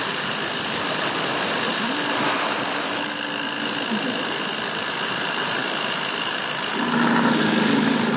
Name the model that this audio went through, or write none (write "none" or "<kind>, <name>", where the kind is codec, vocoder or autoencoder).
none